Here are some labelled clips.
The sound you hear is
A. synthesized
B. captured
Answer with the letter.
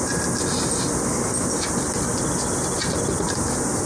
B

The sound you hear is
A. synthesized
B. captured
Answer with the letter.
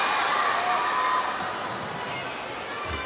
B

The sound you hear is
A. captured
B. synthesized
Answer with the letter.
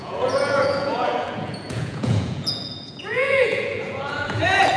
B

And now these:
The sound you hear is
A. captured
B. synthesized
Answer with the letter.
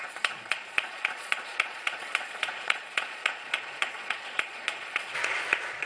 B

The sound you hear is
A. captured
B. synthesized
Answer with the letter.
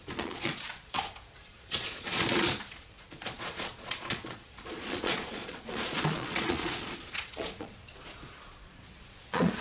B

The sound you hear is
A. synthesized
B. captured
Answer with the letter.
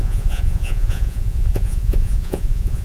A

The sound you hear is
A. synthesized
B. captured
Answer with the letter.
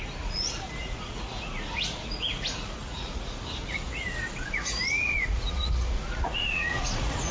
A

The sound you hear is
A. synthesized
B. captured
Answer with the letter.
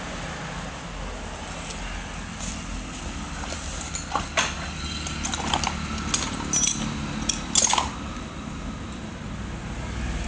B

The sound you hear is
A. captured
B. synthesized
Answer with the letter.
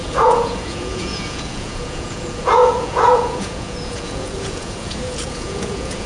B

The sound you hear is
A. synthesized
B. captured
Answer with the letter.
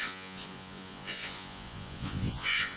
A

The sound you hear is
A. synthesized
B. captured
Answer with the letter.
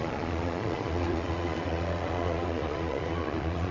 A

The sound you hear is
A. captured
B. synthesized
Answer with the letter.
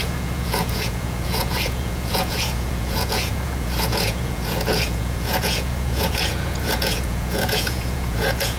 B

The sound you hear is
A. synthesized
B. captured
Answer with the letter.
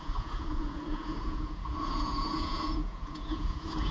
A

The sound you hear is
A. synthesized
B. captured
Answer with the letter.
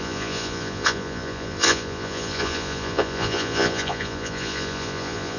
A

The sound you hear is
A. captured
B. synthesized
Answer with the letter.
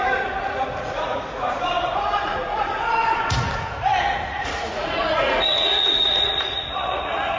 B